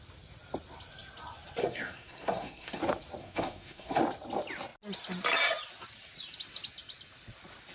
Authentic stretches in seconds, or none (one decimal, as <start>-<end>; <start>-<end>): 0.0-1.6; 2.8-3.2; 4.0-7.7